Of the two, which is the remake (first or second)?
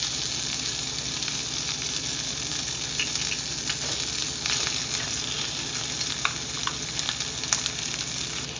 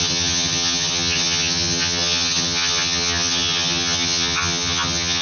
second